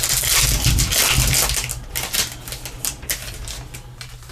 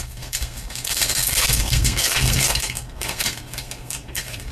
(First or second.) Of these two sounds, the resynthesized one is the second